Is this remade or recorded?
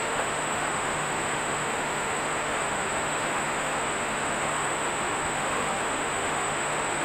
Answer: remade